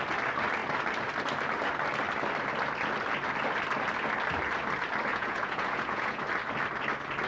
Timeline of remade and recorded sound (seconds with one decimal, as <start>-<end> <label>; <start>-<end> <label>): 0.0-5.1 recorded; 5.1-6.2 remade; 6.2-7.3 recorded

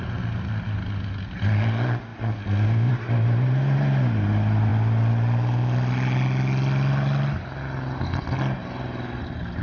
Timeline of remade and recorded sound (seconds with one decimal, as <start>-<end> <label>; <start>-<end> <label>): 0.0-9.6 recorded

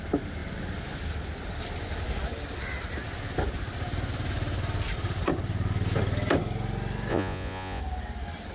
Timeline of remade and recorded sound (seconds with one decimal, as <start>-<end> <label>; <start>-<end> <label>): 0.0-7.1 recorded; 7.1-7.8 remade; 7.8-8.5 recorded

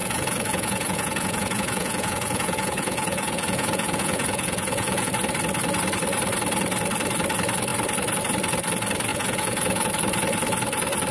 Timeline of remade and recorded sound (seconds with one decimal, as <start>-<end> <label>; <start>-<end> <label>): 0.0-5.1 remade; 5.1-9.1 recorded; 9.1-9.9 remade; 9.9-11.1 recorded

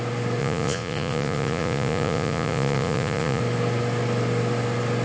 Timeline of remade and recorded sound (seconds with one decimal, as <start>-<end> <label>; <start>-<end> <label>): 0.0-0.4 recorded; 0.4-3.4 remade; 3.4-5.0 recorded

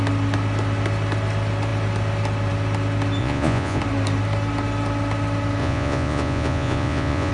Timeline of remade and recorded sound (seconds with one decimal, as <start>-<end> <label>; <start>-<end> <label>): 0.0-3.2 recorded; 3.2-3.8 remade; 3.8-5.6 recorded; 5.6-7.3 remade

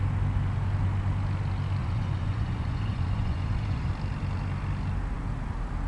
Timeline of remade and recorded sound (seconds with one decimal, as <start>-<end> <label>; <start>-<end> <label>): 0.0-1.8 recorded; 1.8-3.9 remade; 3.9-5.9 recorded